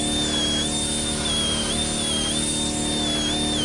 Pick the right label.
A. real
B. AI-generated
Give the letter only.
A